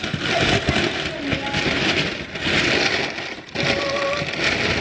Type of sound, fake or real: real